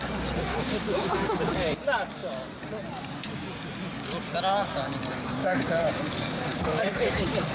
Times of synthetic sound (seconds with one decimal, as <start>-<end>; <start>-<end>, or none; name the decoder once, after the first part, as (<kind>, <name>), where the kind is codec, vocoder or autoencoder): 0.5-1.5 (codec, DAC); 5.4-5.9; 6.5-7.5